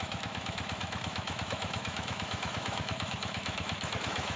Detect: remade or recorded remade